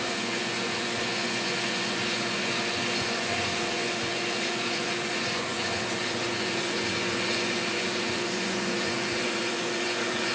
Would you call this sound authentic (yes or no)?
no